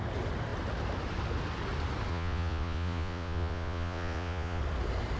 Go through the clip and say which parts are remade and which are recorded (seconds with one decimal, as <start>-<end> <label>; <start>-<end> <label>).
0.0-2.1 recorded; 2.1-4.6 remade; 4.6-5.2 recorded